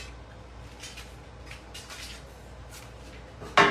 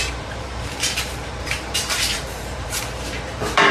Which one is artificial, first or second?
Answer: second